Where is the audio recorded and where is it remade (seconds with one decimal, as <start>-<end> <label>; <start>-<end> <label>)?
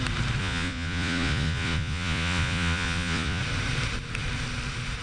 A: 0.0-0.4 recorded; 0.4-3.4 remade; 3.4-5.0 recorded